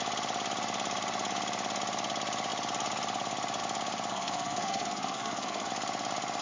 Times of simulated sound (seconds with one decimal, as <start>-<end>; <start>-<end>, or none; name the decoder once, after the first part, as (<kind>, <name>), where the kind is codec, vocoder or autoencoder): 4.1-5.7 (codec, SNAC)